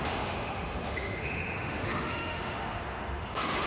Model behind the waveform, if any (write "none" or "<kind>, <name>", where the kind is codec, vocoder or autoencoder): autoencoder, DAC-VAE